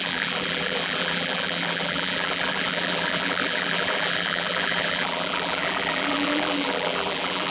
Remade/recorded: remade